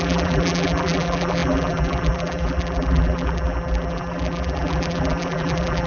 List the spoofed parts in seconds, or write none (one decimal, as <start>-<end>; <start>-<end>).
0.0-5.9

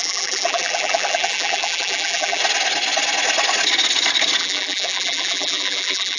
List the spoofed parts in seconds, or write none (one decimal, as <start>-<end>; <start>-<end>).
0.0-2.4; 4.4-6.2

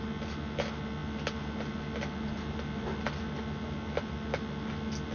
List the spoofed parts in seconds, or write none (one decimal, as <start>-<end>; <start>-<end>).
none

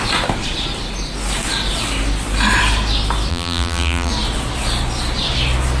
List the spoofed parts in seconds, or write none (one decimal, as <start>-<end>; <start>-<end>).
3.3-4.1

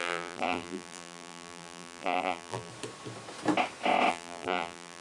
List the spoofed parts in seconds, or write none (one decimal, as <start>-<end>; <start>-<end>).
0.0-2.7; 4.1-5.0